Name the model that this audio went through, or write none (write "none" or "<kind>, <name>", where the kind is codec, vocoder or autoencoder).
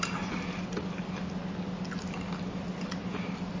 none